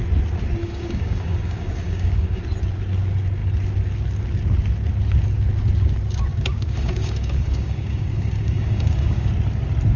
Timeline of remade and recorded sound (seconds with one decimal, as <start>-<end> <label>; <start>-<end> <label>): 0.0-0.6 recorded; 0.6-2.4 remade; 2.4-6.3 recorded; 6.3-9.3 remade; 9.3-10.0 recorded